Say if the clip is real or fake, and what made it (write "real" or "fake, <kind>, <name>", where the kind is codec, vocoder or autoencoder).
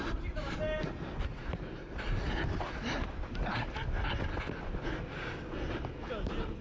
real